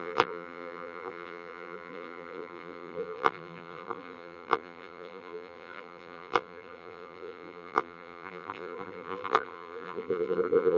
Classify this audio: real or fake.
fake